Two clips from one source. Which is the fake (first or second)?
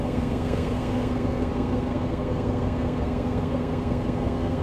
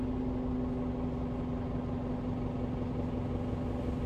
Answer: first